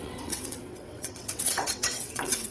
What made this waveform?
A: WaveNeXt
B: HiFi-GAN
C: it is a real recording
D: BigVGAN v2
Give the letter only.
A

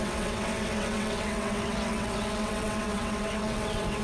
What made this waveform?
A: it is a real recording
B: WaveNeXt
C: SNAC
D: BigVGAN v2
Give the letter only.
B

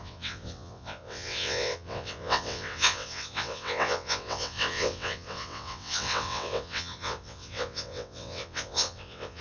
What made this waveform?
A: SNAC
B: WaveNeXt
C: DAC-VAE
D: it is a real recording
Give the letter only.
B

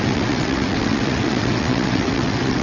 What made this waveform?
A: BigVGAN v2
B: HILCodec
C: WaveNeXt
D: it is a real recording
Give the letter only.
C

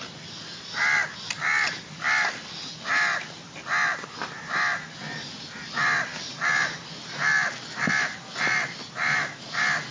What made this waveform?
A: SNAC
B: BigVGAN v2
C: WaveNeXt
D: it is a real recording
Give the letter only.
D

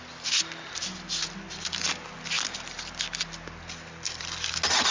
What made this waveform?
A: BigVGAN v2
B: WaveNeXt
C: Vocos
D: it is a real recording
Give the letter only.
D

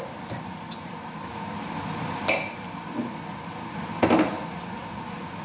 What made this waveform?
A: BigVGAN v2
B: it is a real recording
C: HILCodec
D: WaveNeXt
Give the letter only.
B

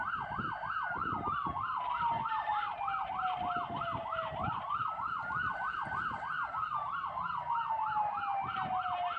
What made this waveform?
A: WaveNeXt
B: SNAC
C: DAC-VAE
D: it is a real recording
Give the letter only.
D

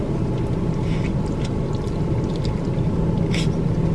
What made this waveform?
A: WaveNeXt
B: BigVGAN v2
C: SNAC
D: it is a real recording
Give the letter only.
D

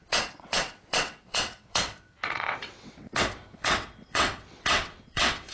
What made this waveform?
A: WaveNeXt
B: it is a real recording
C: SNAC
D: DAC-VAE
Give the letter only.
A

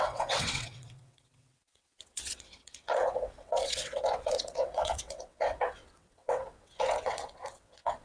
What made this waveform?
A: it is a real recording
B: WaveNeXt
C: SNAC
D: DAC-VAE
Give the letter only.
B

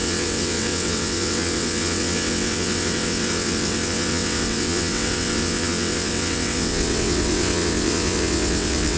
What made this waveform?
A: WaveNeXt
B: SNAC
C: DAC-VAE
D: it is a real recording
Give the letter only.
A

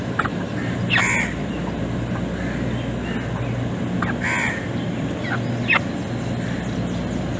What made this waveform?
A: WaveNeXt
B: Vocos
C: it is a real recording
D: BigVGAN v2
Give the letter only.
C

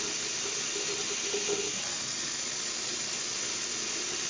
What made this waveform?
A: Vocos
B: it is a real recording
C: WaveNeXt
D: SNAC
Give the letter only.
B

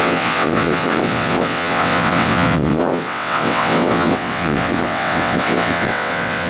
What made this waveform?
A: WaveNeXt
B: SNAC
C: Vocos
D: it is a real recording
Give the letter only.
A